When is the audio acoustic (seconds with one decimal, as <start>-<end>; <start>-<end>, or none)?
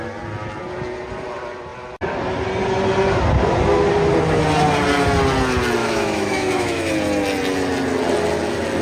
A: 0.0-5.8; 6.9-8.8